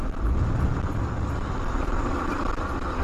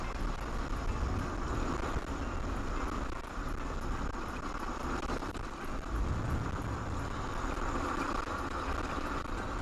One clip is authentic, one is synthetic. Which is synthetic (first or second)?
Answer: first